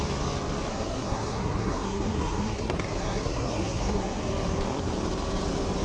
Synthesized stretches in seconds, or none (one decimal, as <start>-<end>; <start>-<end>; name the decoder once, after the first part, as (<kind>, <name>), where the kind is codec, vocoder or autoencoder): 0.7-4.2 (codec, SNAC)